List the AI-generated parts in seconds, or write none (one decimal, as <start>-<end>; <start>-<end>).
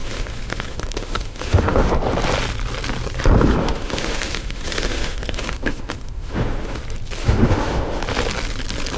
0.0-1.9; 3.6-6.8; 7.2-8.0